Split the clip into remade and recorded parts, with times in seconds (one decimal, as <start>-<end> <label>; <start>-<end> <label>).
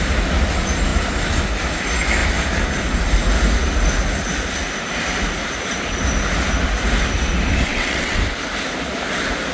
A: 0.0-7.7 recorded; 7.7-8.2 remade; 8.2-9.5 recorded